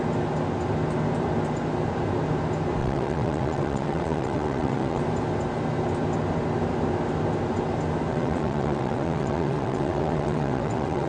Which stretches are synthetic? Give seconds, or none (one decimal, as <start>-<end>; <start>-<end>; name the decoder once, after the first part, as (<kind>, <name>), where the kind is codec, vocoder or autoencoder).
2.8-5.0 (vocoder, WaveNeXt); 8.1-11.1